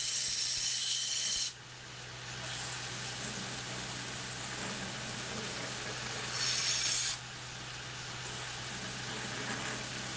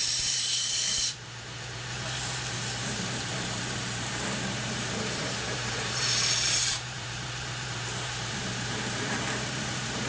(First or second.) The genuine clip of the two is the first